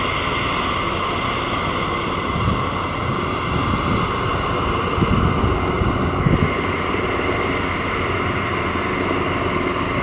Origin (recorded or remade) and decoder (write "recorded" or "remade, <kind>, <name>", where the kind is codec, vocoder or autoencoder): recorded